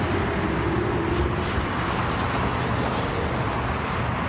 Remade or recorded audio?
recorded